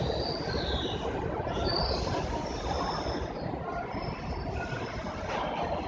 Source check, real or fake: real